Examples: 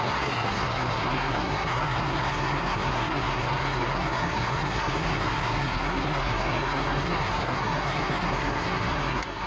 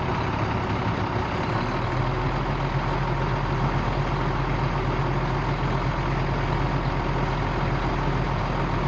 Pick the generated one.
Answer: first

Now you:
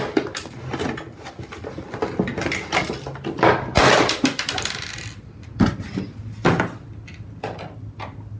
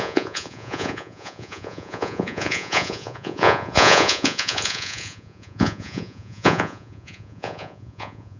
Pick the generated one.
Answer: second